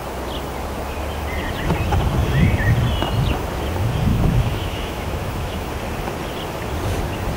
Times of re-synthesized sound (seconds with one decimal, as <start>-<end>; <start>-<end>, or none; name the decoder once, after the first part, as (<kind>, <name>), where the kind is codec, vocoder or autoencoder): 4.1-5.7 (autoencoder, DAC-VAE)